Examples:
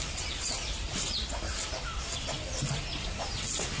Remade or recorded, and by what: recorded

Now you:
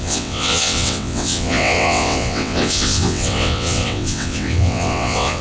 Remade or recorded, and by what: remade, vocoder, WaveNeXt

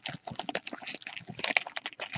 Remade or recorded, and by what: recorded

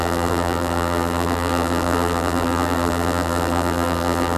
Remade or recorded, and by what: remade, vocoder, BigVGAN v2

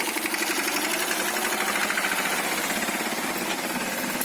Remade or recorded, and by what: recorded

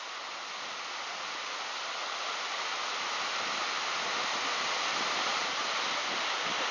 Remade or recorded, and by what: recorded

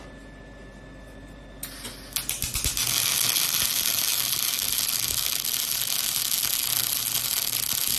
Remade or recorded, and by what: recorded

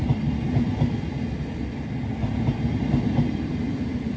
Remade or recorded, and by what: recorded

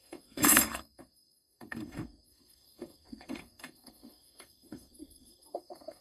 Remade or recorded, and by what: remade, codec, SNAC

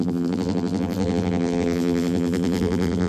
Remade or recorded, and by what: remade, vocoder, BigVGAN v2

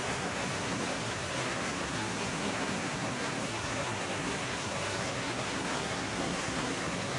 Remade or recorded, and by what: remade, codec, SNAC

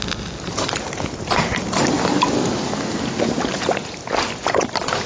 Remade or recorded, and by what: recorded